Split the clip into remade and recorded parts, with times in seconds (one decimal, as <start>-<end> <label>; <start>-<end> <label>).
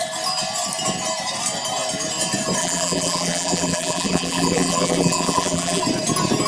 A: 0.0-2.6 recorded; 2.6-5.8 remade; 5.8-6.5 recorded